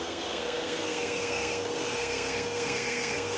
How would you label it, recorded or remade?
remade